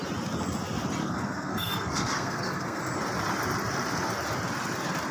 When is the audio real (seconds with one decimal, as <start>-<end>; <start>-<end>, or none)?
0.0-1.0; 2.8-5.1